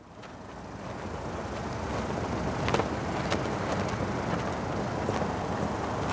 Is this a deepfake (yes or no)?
no